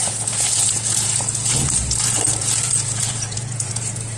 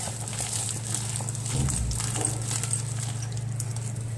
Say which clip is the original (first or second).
second